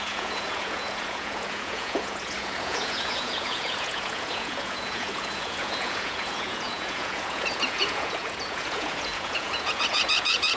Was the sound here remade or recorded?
remade